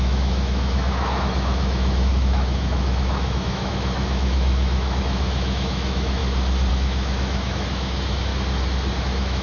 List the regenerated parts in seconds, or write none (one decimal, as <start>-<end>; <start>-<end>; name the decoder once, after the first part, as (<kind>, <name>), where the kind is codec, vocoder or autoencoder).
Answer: 0.0-6.2 (autoencoder, DAC-VAE); 6.7-8.3; 9.0-9.4